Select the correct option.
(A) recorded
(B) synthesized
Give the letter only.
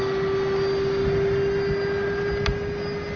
A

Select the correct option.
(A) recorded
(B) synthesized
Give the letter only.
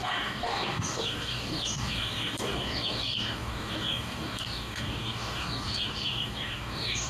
B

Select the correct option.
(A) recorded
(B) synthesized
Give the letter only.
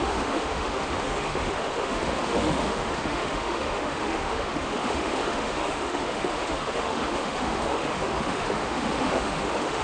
B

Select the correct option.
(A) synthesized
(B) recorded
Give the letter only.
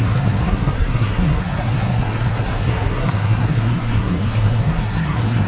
A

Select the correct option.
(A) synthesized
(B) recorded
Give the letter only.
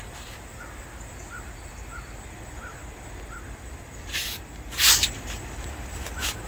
B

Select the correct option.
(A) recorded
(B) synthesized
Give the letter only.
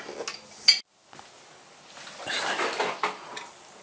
A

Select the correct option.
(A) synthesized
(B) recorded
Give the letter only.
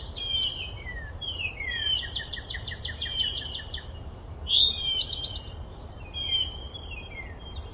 A